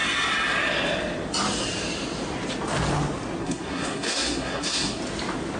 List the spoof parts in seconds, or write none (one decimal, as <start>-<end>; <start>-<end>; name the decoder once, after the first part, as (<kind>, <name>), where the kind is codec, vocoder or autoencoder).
3.4-5.0 (codec, SNAC)